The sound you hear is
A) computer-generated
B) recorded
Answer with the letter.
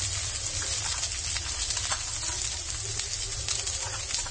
B